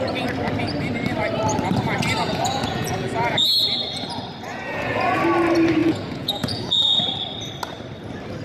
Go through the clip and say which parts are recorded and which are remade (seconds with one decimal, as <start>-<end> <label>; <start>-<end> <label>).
0.0-2.2 recorded; 2.2-3.4 remade; 3.4-4.5 recorded; 4.5-5.2 remade; 5.2-5.8 recorded; 5.8-7.0 remade; 7.0-8.4 recorded